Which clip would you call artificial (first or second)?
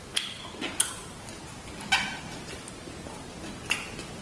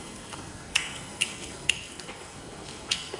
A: second